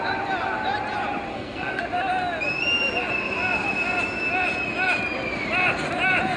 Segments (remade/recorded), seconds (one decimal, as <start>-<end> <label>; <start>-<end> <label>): 0.0-1.3 recorded; 1.3-1.8 remade; 1.8-6.4 recorded

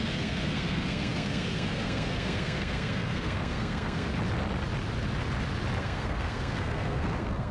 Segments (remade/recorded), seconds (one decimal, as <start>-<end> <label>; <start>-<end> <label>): 0.0-4.1 remade; 4.1-5.8 recorded; 5.8-7.5 remade

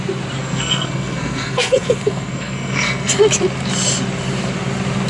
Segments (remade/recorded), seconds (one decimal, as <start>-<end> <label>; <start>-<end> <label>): 0.0-0.4 recorded; 0.4-3.1 remade; 3.1-5.1 recorded

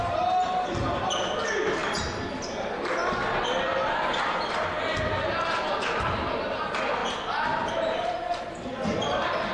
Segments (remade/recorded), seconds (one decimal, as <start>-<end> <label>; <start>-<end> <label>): 0.0-9.5 recorded

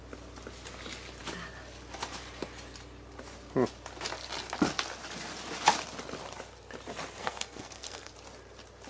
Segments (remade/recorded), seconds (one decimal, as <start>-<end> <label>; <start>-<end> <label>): 0.0-7.2 recorded; 7.2-8.1 remade; 8.1-8.9 recorded

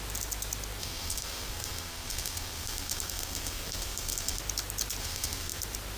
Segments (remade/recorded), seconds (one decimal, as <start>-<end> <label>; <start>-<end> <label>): 0.0-0.8 recorded; 0.8-4.4 remade; 4.4-5.0 recorded; 5.0-5.6 remade; 5.6-6.0 recorded